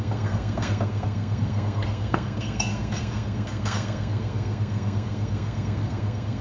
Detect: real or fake fake